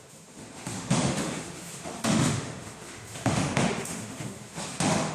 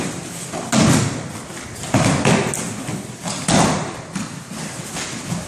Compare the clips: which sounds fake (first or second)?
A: first